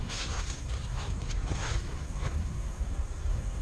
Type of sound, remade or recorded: remade